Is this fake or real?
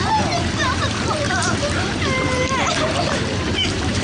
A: fake